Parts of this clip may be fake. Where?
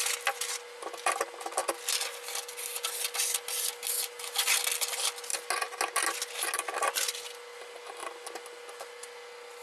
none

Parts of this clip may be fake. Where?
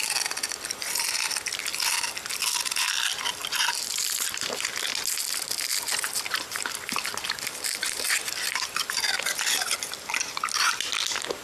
none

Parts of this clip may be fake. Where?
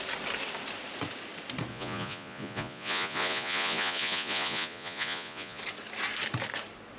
1.7-5.6 (vocoder, Vocos)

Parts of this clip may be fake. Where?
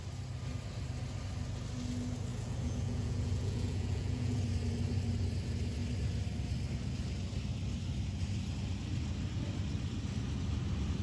2.3-4.4 (vocoder, Vocos)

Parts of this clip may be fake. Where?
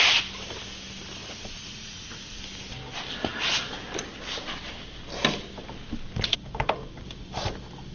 1.2-2.4 (vocoder, Vocos)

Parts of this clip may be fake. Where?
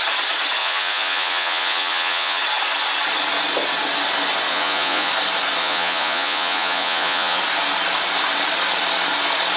0.6-2.4 (vocoder, Vocos); 4.5-5.1; 5.6-7.4